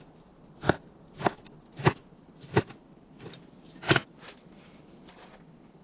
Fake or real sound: real